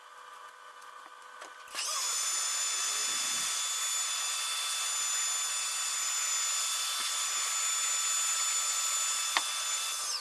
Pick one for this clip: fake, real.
real